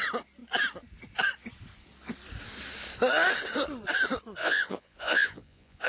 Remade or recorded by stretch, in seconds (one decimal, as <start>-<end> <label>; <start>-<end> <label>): 0.0-4.4 recorded; 4.4-5.9 remade